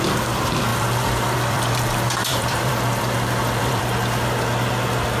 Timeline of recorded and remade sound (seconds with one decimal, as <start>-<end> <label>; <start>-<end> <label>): 0.0-0.7 recorded; 0.7-3.8 remade; 3.8-5.2 recorded